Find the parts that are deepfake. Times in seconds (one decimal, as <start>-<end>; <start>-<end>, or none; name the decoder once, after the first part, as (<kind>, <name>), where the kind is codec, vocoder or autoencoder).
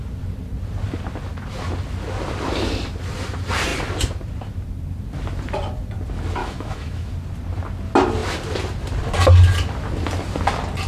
6.4-7.1 (autoencoder, DAC-VAE)